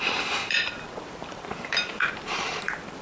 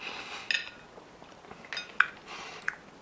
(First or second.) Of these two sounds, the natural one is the second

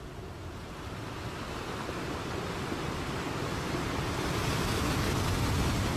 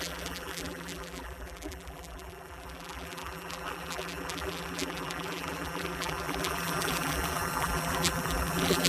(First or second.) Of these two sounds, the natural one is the first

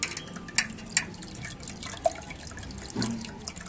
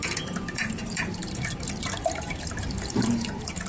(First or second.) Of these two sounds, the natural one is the first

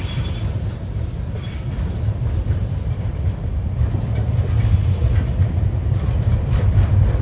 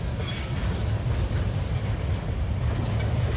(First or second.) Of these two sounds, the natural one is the second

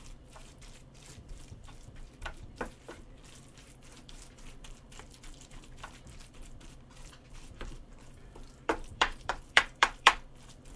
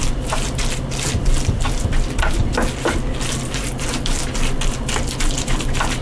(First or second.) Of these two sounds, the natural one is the second